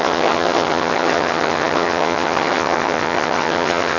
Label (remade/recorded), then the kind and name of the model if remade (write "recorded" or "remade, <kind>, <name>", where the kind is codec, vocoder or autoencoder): remade, vocoder, HiFi-GAN